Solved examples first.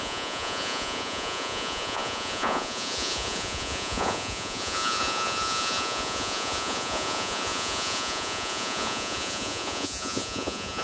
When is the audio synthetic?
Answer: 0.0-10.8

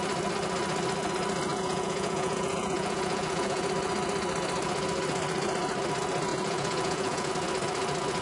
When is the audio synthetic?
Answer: 1.5-3.7; 6.3-7.3

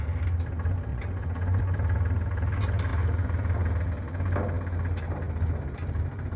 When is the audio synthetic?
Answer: 0.9-1.6

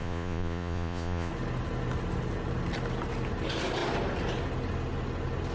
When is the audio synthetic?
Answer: 0.0-1.3

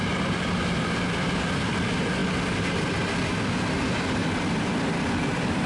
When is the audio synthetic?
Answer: none